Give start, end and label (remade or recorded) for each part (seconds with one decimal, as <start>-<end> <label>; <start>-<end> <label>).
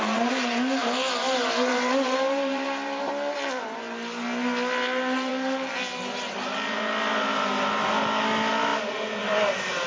0.0-0.8 recorded; 0.8-3.1 remade; 3.1-9.9 recorded